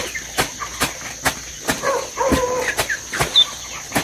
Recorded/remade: recorded